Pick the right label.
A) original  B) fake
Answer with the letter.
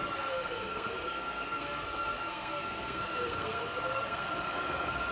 B